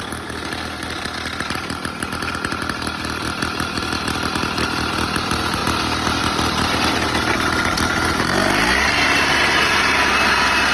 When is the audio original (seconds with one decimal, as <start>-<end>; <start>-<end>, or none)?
0.0-10.7